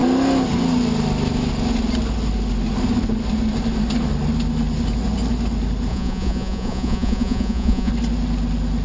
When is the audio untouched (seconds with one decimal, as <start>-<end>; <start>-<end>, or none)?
0.0-5.9; 7.9-8.8